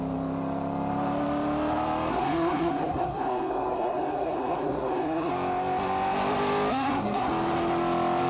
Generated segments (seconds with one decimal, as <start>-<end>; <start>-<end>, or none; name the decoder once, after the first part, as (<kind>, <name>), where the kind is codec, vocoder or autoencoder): 2.1-5.3 (codec, SNAC); 6.7-7.3